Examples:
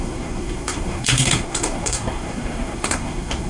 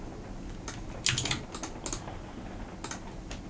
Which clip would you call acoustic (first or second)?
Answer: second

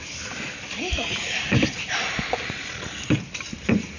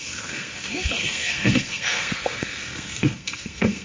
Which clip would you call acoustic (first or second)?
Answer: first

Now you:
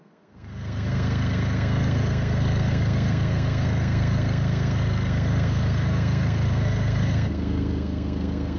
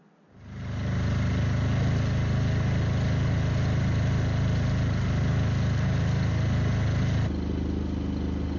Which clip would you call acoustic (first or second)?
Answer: second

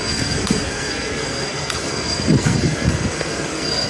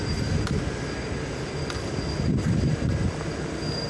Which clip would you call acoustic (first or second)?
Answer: second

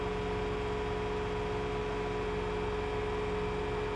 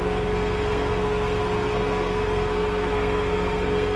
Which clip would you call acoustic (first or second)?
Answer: first